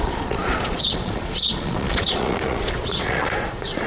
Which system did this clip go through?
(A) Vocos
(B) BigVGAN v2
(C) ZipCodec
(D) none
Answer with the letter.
A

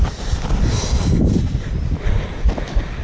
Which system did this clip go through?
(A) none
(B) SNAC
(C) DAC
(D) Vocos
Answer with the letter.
A